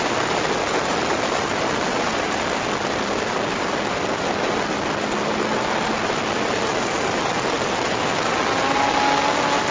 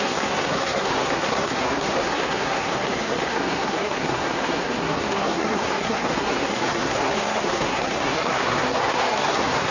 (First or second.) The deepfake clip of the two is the second